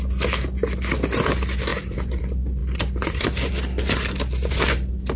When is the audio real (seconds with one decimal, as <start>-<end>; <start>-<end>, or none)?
0.0-2.6; 3.5-5.2